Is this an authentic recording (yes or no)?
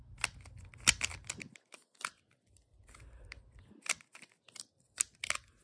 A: yes